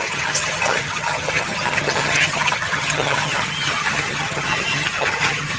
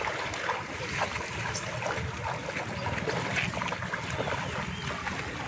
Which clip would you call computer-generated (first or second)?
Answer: first